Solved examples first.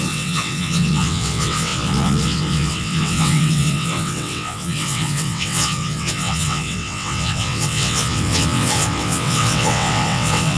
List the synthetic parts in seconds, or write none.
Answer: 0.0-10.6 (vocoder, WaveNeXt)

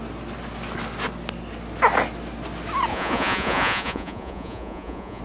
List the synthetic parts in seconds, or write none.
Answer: 2.9-5.2 (vocoder, Vocos)

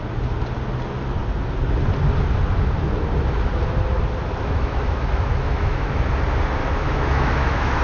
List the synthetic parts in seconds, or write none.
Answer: 4.4-6.0 (autoencoder, DAC-VAE); 6.6-7.8

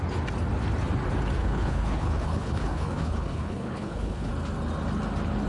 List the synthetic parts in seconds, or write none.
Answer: 1.4-4.3 (codec, HILCodec)

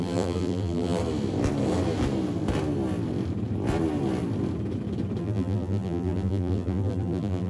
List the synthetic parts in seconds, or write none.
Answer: 0.0-1.0 (vocoder, BigVGAN v2); 5.2-7.5

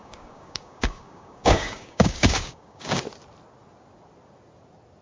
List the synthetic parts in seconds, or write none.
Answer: 0.0-3.0 (codec, DAC)

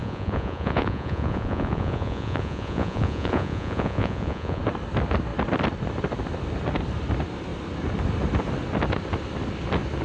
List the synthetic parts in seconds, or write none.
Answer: 0.0-4.6 (vocoder, Vocos)

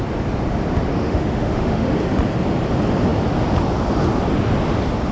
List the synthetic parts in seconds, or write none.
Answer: 0.9-1.9 (autoencoder, DAC-VAE)